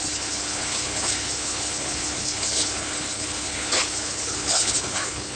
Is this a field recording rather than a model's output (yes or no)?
no